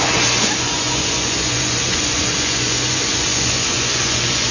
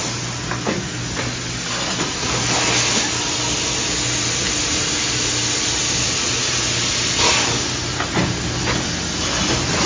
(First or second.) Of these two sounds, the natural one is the second